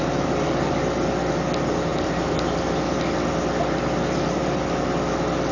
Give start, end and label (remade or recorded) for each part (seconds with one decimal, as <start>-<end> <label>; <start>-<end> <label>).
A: 0.0-1.9 recorded; 1.9-2.7 remade; 2.7-5.5 recorded